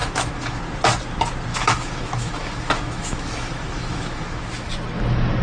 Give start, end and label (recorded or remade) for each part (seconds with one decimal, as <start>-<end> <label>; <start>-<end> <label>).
0.0-0.6 remade; 0.6-1.5 recorded; 1.5-4.7 remade; 4.7-5.4 recorded